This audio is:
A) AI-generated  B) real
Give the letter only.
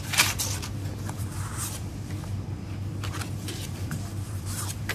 A